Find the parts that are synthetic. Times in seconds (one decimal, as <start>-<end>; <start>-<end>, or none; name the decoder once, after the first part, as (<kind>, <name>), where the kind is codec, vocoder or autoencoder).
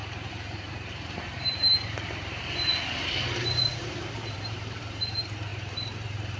0.0-2.7 (vocoder, BigVGAN v2); 3.7-6.4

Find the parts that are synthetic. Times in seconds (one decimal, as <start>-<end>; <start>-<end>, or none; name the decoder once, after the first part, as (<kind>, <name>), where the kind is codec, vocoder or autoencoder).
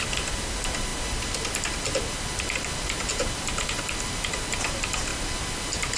none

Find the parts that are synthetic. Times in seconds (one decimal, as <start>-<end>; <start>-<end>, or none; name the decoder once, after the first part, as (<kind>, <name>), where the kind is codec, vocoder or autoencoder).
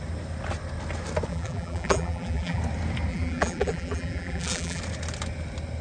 1.3-2.6 (vocoder, BigVGAN v2); 3.1-4.8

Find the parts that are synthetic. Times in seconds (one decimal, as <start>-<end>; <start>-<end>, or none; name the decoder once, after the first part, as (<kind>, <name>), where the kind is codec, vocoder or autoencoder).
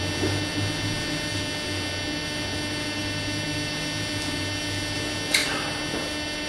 none